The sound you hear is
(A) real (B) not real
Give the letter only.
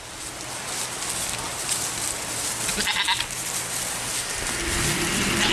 A